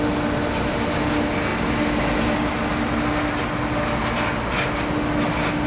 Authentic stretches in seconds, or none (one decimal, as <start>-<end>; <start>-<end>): 0.0-5.7